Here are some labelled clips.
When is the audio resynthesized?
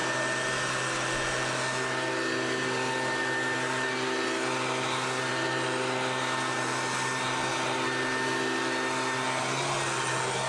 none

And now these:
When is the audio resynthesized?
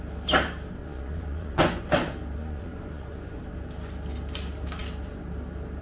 0.8-1.9; 2.4-3.4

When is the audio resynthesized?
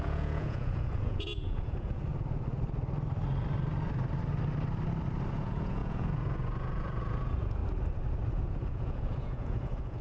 0.0-2.1; 5.3-7.6; 8.3-10.0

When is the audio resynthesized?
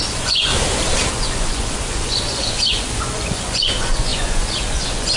0.0-0.5; 1.1-5.2